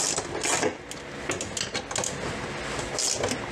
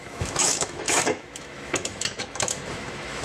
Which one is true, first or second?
first